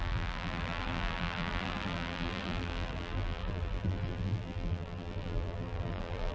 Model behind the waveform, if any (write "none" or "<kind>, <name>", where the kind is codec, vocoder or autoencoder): vocoder, BigVGAN v2